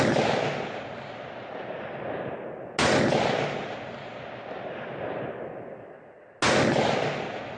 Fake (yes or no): no